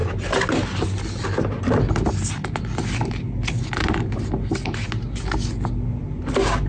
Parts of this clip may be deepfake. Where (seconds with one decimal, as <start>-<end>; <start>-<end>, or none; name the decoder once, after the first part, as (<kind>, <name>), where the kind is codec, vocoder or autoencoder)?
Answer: none